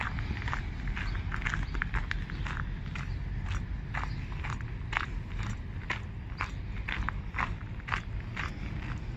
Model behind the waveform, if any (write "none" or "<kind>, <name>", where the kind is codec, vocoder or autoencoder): none